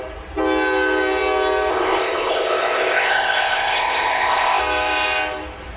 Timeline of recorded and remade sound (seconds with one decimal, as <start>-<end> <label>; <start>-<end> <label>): 0.0-1.7 recorded; 1.7-4.6 remade; 4.6-5.8 recorded